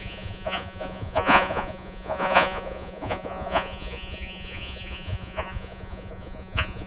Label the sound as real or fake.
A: fake